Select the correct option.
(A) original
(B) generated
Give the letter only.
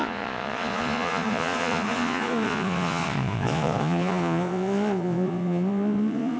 B